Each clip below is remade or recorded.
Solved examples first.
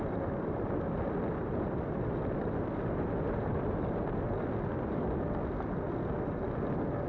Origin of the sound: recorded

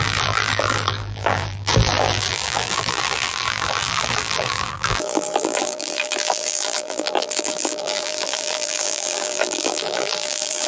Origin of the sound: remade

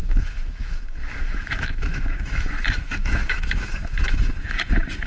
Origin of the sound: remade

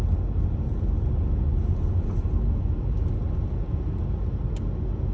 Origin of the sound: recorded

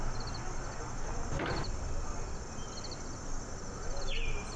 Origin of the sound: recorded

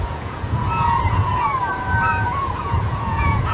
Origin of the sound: remade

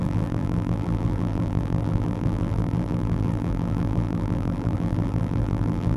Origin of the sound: remade